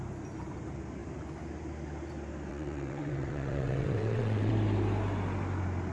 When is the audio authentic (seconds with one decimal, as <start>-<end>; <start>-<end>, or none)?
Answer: 0.0-2.5; 4.5-5.9